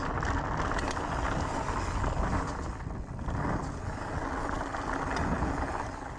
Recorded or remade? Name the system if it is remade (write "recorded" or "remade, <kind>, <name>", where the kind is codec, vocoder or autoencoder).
recorded